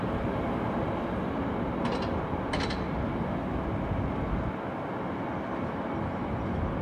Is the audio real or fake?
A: real